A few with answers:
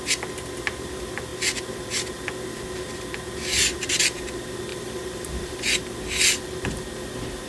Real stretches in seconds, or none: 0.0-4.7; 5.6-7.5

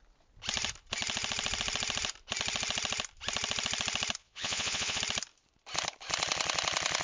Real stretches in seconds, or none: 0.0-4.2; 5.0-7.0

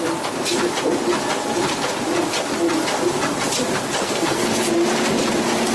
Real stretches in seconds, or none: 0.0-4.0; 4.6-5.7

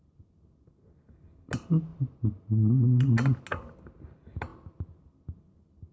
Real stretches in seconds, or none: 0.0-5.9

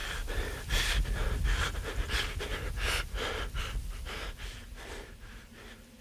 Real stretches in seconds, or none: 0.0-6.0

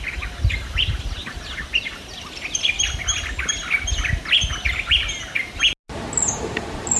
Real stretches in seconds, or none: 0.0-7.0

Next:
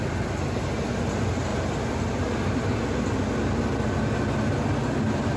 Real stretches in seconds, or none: 0.0-5.4